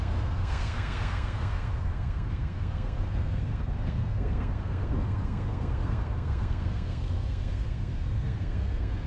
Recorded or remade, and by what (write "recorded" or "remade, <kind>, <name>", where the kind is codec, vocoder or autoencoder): remade, codec, SNAC